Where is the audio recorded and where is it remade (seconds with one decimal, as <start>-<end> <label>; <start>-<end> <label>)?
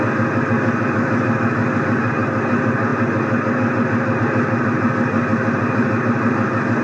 0.0-6.8 recorded